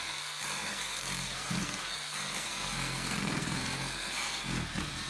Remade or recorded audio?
remade